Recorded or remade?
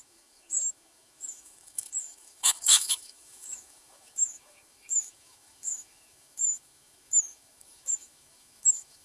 remade